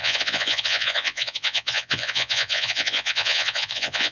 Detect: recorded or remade remade